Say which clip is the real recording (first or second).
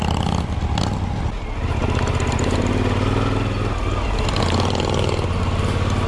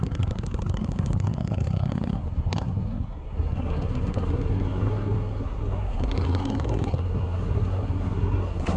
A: first